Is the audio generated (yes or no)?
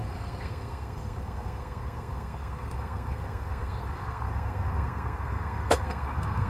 yes